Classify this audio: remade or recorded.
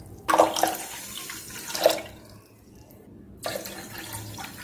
recorded